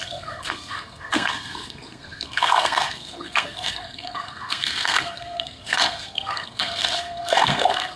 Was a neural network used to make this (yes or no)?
yes